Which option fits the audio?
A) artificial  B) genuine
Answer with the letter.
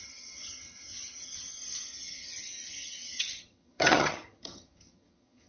A